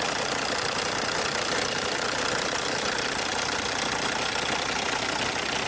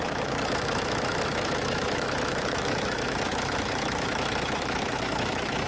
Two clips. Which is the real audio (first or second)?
first